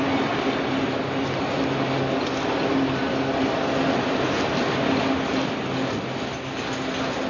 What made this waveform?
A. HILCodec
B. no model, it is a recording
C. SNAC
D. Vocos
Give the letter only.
B